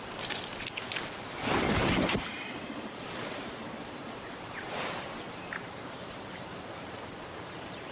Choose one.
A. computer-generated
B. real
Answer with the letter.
A